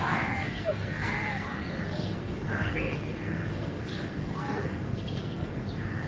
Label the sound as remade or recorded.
remade